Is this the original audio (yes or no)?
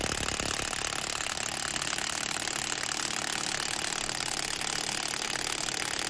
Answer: yes